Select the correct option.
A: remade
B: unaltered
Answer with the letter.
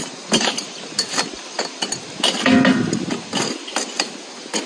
B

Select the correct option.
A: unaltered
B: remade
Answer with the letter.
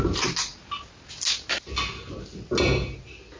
A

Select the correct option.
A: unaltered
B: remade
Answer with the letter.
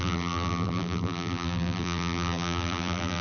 B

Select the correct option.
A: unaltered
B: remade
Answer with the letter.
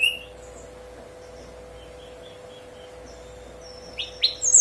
A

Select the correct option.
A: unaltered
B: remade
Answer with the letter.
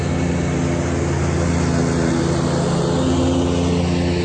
A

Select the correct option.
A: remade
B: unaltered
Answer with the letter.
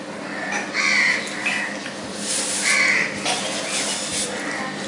B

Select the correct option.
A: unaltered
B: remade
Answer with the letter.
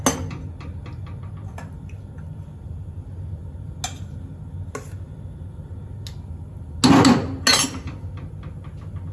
A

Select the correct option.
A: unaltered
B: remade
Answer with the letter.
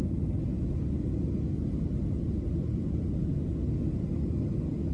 A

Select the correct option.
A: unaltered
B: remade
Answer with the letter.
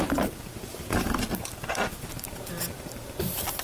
B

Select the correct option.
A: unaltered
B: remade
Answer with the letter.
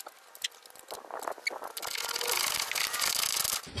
A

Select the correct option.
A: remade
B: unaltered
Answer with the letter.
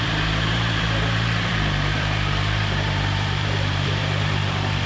A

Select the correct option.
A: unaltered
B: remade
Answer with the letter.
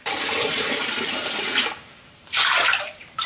B